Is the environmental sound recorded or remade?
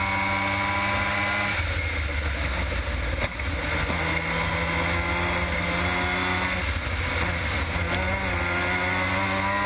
recorded